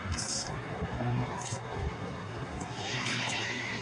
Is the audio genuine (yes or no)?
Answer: no